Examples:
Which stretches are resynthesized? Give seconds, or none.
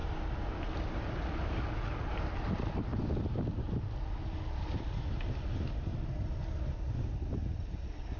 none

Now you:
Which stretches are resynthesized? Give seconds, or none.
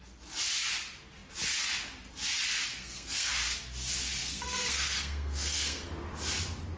2.7-3.3 (codec, SNAC); 4.2-5.9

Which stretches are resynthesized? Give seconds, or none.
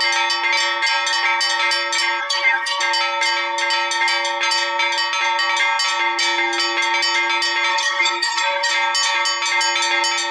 2.2-2.8 (codec, SNAC); 7.7-8.7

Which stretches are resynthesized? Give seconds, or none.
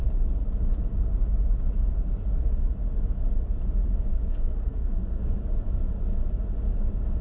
4.1-5.3 (codec, SNAC)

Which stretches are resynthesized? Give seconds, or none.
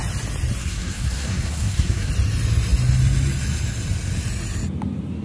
0.6-2.1 (codec, SNAC)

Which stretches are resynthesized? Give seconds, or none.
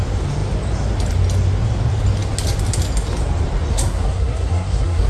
3.7-5.1 (codec, SNAC)